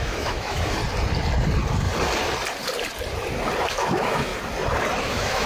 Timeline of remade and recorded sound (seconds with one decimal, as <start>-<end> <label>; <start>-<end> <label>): 0.0-0.8 remade; 0.8-3.7 recorded; 3.7-4.3 remade; 4.3-5.0 recorded; 5.0-5.5 remade